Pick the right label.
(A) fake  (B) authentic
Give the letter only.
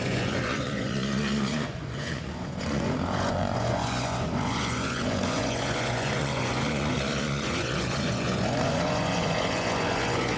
A